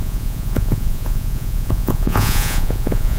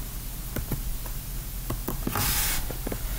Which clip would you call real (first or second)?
second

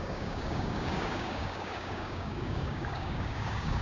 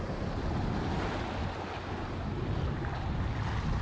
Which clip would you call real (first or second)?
second